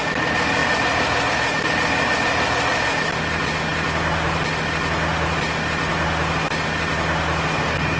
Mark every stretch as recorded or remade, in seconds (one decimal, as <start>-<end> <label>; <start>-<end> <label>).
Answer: 0.0-8.0 recorded